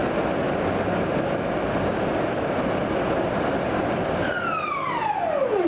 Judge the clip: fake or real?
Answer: real